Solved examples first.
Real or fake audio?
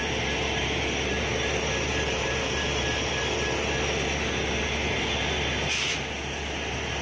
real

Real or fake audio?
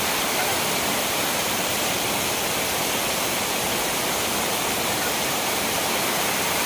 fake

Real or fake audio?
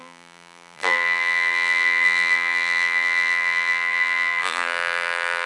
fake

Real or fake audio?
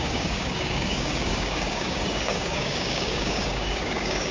fake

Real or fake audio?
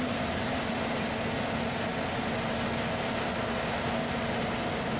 real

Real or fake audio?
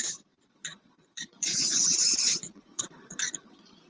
fake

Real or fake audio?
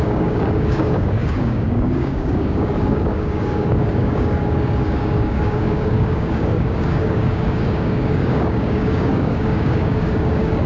fake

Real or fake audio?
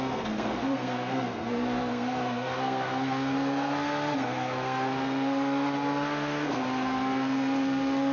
fake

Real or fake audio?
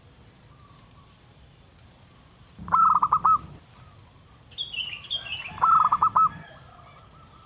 real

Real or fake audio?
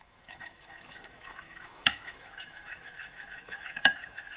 fake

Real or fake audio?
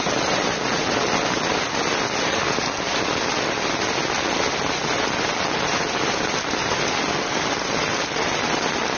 real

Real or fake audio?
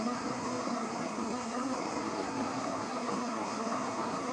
fake